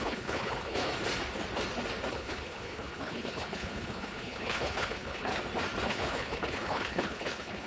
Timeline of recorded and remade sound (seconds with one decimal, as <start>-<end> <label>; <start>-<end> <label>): 0.0-0.9 remade; 0.9-2.1 recorded; 2.1-5.3 remade; 5.3-5.9 recorded; 5.9-7.7 remade

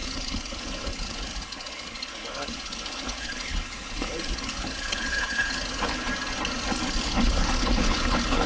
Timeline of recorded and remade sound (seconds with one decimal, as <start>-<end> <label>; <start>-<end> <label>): 0.0-6.1 remade; 6.1-7.0 recorded; 7.0-8.5 remade

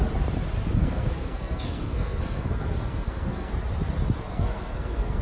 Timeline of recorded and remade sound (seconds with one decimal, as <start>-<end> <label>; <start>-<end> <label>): 0.0-0.8 recorded; 0.8-3.5 remade; 3.5-4.3 recorded; 4.3-5.2 remade